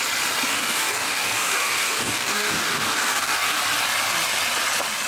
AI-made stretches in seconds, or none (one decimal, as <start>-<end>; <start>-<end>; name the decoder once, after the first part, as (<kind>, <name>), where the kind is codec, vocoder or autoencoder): 0.5-3.6 (codec, DAC)